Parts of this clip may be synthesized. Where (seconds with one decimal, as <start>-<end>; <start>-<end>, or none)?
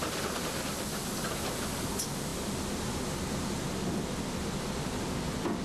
none